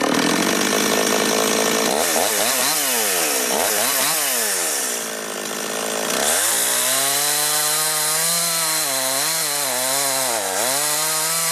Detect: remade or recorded recorded